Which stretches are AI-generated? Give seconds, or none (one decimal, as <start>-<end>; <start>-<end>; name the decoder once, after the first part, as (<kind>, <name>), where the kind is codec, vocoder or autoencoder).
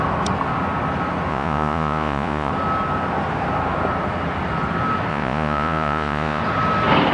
1.3-2.5 (vocoder, Vocos); 5.1-6.4